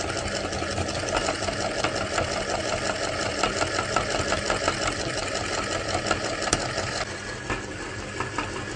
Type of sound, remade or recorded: recorded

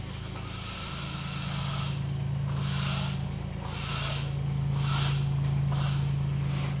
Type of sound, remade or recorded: recorded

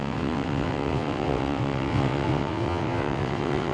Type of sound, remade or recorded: remade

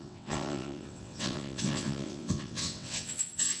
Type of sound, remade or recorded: remade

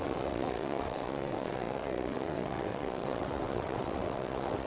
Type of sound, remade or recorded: remade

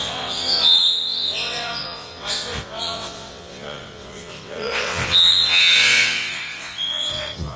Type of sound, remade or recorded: remade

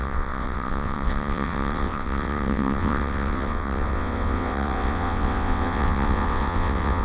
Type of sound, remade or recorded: remade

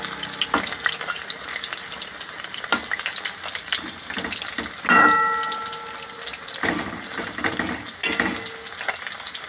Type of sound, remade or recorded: recorded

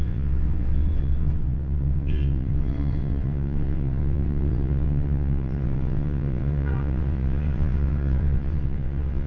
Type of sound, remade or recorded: remade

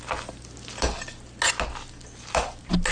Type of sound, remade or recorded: recorded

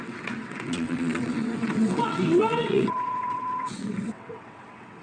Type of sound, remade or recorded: remade